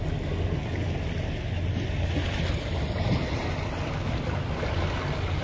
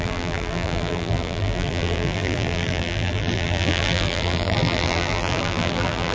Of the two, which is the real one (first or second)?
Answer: first